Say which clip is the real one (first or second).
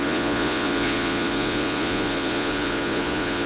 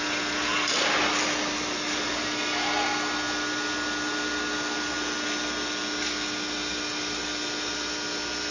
second